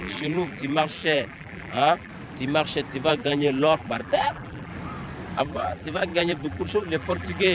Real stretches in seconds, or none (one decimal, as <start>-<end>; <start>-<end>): 2.1-3.1; 4.7-5.4